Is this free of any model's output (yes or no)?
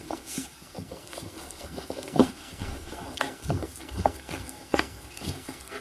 no